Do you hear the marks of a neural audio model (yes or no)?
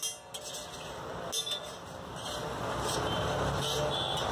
no